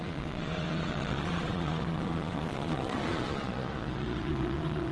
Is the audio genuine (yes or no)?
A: no